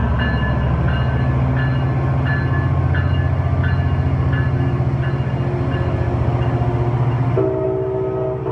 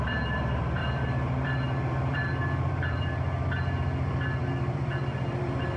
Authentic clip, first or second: first